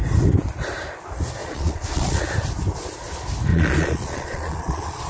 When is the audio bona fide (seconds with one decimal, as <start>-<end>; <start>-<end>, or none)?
0.0-1.4; 2.2-3.5